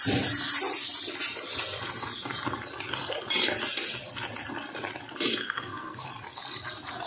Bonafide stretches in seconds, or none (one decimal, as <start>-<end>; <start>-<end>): 0.0-5.4; 6.1-7.1